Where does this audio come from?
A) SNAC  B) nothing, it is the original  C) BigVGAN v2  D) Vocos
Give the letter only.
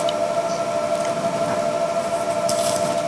B